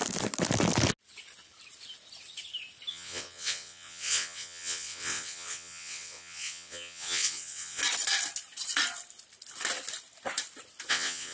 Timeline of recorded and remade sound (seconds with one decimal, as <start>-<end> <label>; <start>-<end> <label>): 0.0-2.9 recorded; 2.9-7.8 remade; 7.8-10.9 recorded; 10.9-11.3 remade